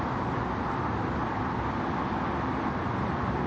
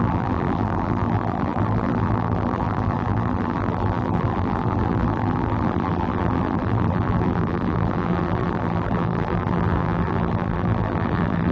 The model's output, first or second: second